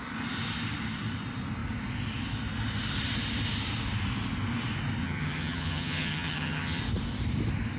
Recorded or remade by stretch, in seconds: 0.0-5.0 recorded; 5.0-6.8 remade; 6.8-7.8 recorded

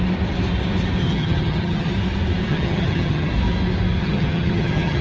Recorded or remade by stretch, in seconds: 0.0-1.0 recorded; 1.0-1.9 remade; 1.9-2.5 recorded; 2.5-3.3 remade; 3.3-4.0 recorded; 4.0-5.0 remade